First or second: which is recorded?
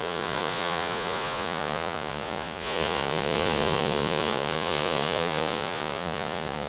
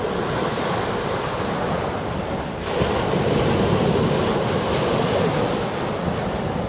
second